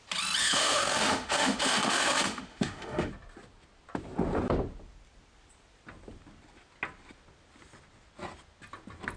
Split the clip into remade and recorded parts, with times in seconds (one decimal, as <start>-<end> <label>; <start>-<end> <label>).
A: 0.0-0.4 recorded; 0.4-3.1 remade; 3.1-9.2 recorded